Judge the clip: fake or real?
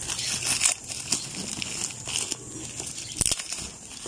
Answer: real